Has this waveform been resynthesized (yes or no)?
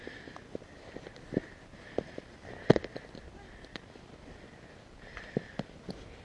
no